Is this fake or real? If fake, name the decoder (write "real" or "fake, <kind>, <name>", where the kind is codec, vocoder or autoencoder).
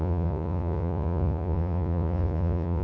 fake, vocoder, Vocos